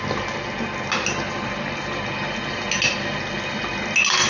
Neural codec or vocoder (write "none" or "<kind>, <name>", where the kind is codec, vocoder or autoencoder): none